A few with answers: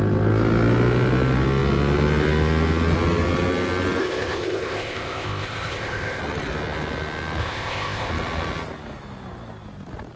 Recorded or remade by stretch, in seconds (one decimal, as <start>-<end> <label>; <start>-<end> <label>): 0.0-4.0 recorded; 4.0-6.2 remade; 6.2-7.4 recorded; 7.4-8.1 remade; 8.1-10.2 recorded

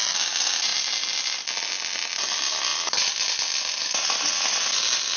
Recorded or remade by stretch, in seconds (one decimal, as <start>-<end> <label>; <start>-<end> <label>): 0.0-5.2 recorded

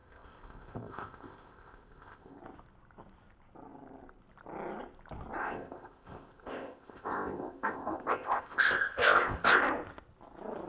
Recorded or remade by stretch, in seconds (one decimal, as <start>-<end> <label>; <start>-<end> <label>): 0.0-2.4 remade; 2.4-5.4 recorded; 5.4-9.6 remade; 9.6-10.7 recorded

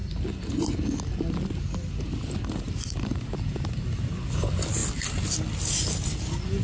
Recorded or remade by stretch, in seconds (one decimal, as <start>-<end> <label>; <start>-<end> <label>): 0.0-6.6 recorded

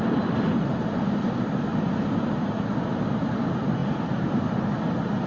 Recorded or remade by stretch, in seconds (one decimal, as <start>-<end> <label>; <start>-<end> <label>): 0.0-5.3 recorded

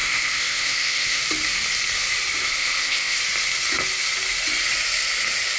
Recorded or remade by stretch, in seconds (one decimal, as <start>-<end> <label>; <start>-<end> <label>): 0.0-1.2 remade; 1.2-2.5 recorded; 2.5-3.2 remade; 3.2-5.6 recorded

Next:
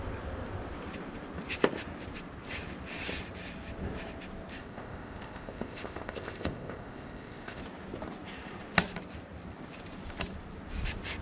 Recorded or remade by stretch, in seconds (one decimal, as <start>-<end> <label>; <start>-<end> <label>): 0.0-4.6 recorded; 4.6-7.6 remade; 7.6-11.2 recorded

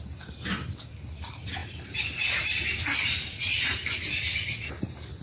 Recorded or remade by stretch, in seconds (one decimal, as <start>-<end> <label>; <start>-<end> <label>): 0.0-5.2 recorded